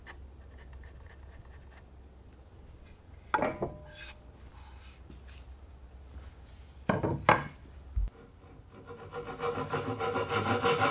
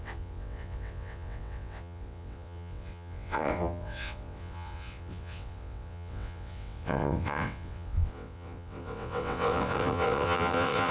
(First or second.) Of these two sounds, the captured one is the first